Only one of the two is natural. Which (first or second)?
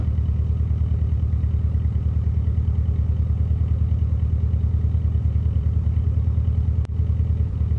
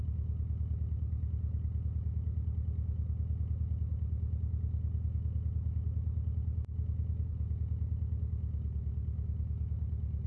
second